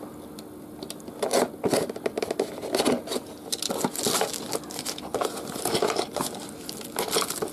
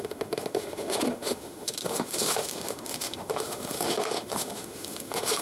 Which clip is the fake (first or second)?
second